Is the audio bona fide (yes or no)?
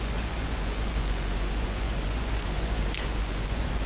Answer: no